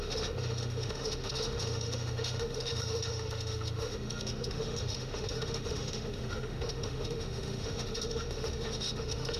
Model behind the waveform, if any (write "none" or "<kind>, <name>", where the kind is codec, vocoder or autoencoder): autoencoder, DAC-VAE